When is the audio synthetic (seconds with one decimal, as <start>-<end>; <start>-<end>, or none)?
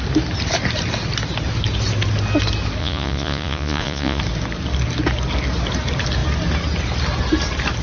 2.8-4.2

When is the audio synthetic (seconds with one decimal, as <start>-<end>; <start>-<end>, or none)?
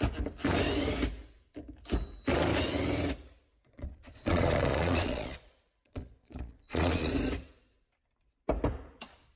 3.5-7.1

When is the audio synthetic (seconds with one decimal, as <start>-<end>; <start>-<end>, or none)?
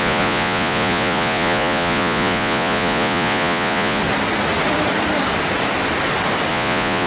0.0-4.0; 6.5-7.1